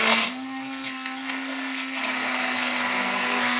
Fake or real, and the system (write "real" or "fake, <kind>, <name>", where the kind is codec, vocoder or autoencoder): fake, codec, SNAC